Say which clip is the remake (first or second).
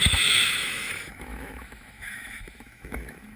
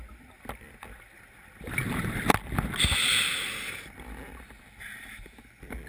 first